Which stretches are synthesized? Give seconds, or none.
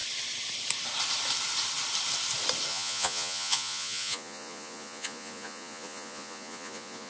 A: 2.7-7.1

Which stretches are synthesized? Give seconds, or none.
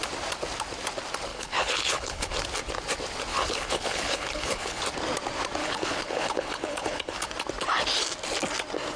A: 1.3-2.3; 3.3-4.8; 5.6-7.3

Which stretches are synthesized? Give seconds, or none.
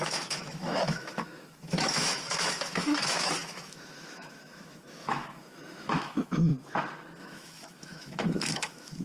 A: 0.0-6.5; 7.2-9.0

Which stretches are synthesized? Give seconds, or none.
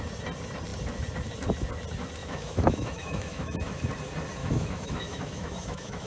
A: 2.2-3.8; 4.4-6.1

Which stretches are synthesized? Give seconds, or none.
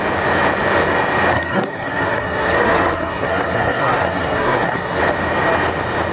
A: 1.3-5.0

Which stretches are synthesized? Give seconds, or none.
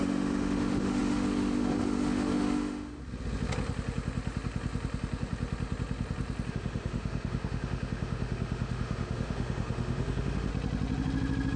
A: 0.0-3.0; 6.5-10.5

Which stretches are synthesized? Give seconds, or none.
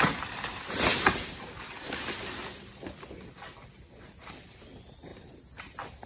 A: none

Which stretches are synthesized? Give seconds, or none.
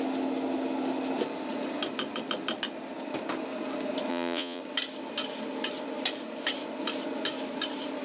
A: 4.1-4.6